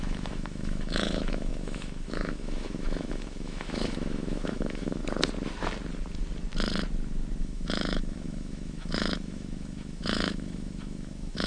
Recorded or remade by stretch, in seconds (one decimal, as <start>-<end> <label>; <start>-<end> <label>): 0.0-5.0 remade; 5.0-7.4 recorded; 7.4-11.5 remade